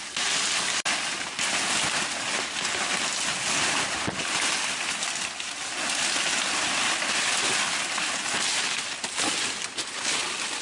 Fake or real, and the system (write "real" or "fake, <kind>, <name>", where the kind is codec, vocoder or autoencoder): real